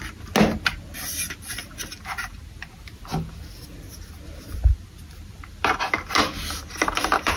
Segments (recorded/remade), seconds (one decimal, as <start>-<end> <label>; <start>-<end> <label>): 0.0-7.4 recorded